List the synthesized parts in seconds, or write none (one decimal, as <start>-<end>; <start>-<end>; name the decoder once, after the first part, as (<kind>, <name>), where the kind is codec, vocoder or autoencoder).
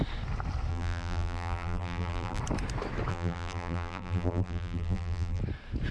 0.7-2.4 (vocoder, BigVGAN v2); 3.1-5.4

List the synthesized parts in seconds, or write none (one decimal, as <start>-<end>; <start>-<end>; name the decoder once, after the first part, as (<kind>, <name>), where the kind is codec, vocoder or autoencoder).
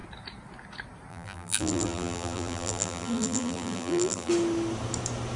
1.1-4.3 (vocoder, BigVGAN v2)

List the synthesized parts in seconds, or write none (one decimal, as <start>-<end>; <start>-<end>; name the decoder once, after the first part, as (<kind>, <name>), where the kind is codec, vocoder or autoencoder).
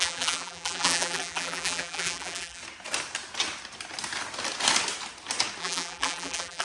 0.0-2.6 (vocoder, BigVGAN v2); 5.6-6.6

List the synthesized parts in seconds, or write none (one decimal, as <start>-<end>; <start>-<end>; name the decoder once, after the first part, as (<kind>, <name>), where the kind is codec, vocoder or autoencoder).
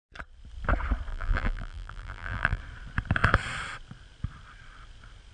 1.1-2.6 (vocoder, BigVGAN v2)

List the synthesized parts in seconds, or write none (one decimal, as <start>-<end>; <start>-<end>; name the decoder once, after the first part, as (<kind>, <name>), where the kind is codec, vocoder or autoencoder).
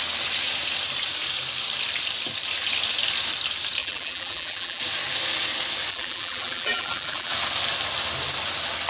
3.8-4.8 (vocoder, BigVGAN v2); 5.9-7.3